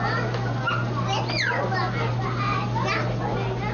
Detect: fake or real real